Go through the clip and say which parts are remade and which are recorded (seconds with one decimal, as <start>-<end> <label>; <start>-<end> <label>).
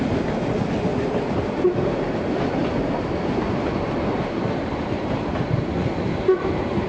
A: 0.0-0.9 recorded; 0.9-2.2 remade; 2.2-2.6 recorded; 2.6-5.6 remade; 5.6-6.9 recorded